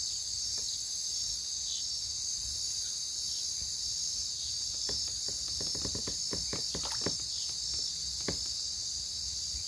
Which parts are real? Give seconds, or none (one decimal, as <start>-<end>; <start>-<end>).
0.0-9.7